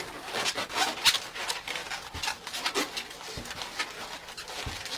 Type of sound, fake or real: real